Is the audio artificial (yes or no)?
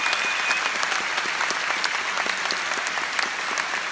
no